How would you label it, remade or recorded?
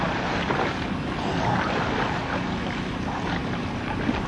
recorded